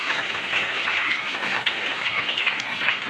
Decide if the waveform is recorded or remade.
remade